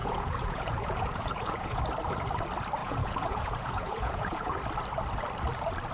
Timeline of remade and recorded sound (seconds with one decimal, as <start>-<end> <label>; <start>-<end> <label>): 0.0-1.8 remade; 1.8-2.8 recorded; 2.8-4.6 remade; 4.6-5.9 recorded